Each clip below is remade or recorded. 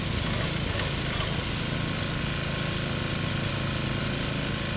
recorded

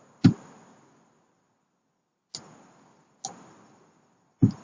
recorded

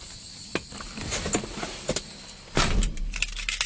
recorded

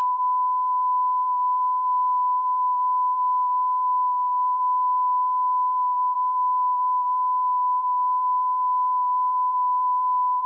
remade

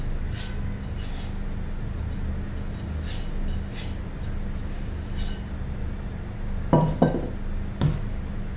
recorded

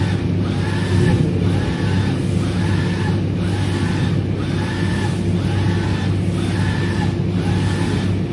recorded